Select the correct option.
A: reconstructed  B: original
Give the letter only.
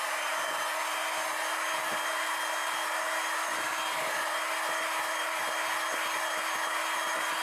B